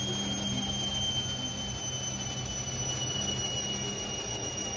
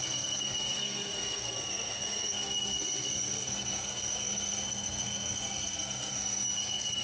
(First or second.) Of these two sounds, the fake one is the second